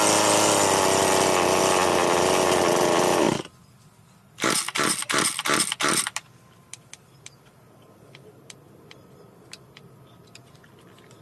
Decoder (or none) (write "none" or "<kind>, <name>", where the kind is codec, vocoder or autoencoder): none